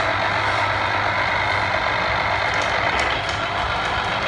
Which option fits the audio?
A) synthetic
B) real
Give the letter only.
B